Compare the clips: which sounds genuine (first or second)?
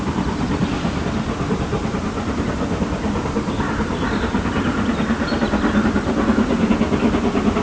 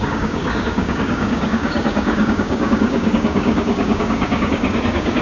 first